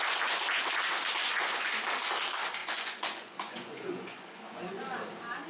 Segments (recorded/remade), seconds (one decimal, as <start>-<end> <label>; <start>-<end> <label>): 0.0-1.2 recorded; 1.2-1.7 remade; 1.7-2.6 recorded; 2.6-4.8 remade; 4.8-5.5 recorded